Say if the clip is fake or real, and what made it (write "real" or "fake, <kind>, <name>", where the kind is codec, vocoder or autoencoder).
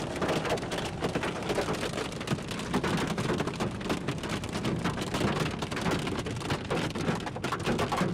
real